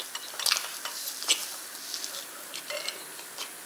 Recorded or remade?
recorded